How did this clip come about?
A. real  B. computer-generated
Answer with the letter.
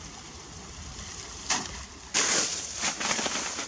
B